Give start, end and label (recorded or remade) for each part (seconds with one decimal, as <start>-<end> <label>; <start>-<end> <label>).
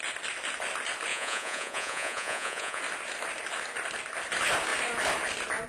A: 0.0-1.1 recorded; 1.1-2.8 remade; 2.8-5.7 recorded